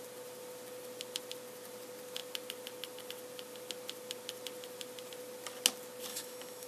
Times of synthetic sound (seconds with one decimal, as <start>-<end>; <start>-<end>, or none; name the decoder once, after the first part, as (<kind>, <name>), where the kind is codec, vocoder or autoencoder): 6.1-6.7 (autoencoder, DAC-VAE)